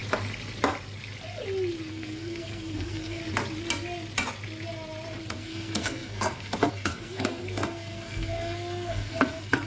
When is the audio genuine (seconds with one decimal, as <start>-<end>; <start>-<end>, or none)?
0.0-1.9; 3.2-5.2